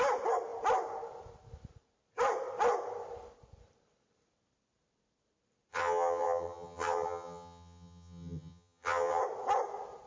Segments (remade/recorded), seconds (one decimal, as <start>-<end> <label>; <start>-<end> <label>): 0.0-5.7 recorded; 5.7-9.2 remade; 9.2-10.1 recorded